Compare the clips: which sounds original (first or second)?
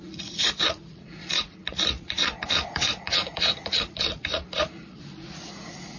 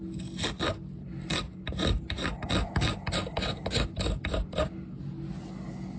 second